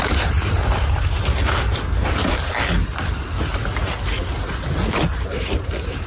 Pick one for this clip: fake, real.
real